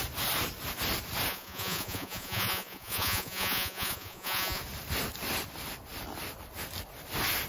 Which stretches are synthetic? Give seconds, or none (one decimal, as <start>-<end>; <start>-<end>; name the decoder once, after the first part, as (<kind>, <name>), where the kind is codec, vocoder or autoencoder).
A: 1.3-4.6 (vocoder, Vocos)